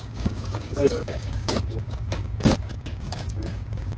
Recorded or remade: remade